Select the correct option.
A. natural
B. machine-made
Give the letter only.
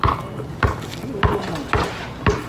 A